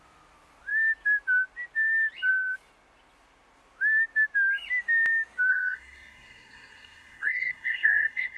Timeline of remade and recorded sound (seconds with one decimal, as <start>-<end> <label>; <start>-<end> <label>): 0.0-5.5 recorded; 5.5-8.4 remade